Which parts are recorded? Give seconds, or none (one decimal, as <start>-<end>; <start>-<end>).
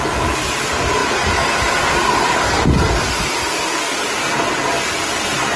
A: 0.0-5.6